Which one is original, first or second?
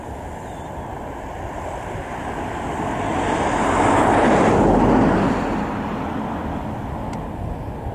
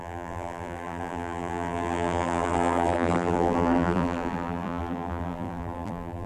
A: first